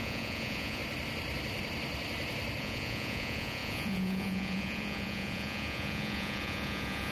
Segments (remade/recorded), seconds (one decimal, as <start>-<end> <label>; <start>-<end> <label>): 0.0-0.8 remade; 0.8-2.6 recorded; 2.6-7.1 remade